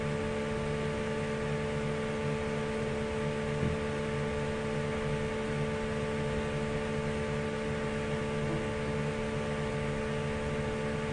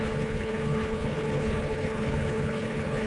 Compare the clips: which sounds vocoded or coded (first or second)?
second